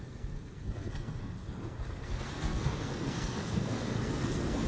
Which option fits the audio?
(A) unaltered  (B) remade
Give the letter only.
B